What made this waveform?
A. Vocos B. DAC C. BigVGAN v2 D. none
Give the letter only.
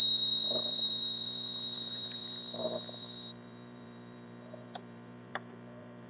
C